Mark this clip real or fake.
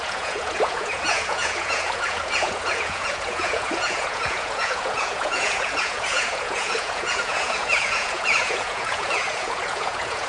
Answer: fake